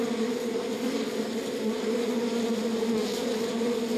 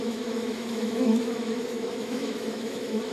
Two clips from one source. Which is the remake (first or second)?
second